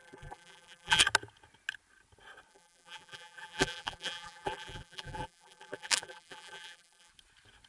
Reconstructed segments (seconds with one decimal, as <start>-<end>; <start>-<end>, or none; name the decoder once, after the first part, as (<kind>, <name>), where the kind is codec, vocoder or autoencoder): 0.0-1.0 (vocoder, BigVGAN v2); 2.5-7.1